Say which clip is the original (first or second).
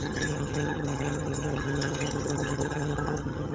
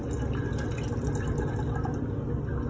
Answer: second